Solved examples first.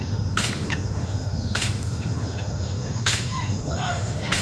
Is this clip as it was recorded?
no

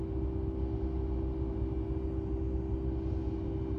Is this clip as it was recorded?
yes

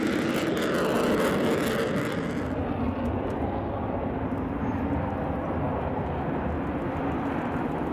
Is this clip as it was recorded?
yes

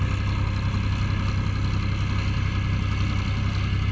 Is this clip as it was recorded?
yes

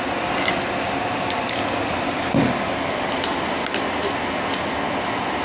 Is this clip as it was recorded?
yes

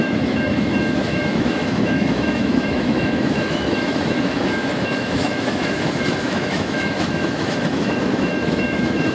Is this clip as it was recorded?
no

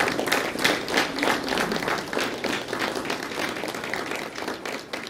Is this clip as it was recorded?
yes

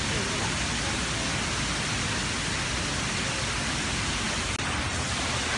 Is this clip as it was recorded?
yes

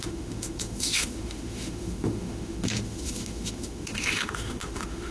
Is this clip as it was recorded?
no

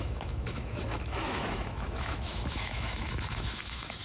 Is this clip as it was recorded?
no